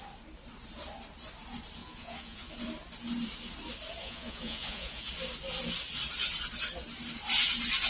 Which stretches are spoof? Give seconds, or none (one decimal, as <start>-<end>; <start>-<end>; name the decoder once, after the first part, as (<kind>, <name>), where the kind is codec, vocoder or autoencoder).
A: 1.8-2.5 (vocoder, Vocos); 4.0-5.1